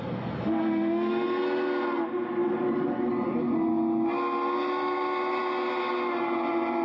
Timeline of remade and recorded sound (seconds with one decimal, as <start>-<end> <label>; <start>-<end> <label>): 0.0-6.8 recorded